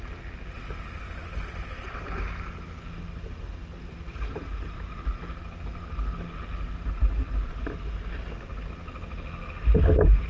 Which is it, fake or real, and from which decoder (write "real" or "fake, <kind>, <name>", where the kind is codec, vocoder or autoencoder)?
real